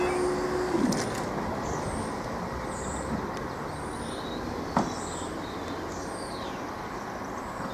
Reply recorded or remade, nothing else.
recorded